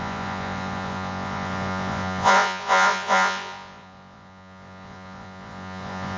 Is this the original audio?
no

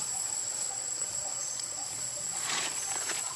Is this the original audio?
no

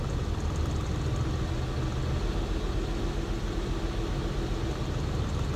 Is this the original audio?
yes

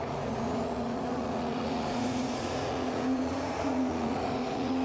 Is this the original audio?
no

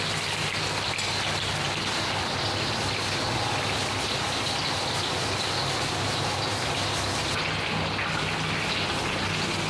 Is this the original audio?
yes